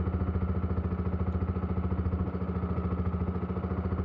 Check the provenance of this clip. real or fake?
real